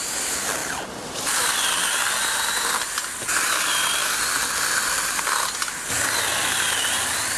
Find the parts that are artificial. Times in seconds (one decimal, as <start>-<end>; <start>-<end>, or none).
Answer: none